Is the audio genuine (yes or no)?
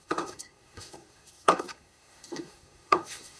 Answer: no